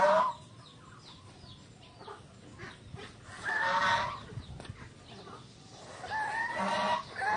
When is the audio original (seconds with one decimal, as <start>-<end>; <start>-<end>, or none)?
0.0-7.4